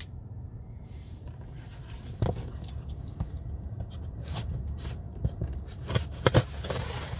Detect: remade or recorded remade